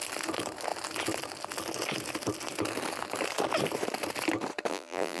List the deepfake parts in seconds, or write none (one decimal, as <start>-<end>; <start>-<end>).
4.7-5.2